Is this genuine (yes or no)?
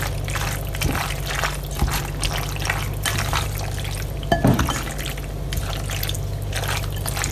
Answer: yes